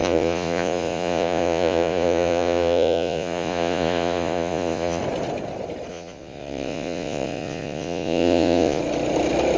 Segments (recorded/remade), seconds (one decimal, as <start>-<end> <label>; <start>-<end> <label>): 0.0-5.0 remade; 5.0-5.9 recorded; 5.9-8.8 remade; 8.8-9.6 recorded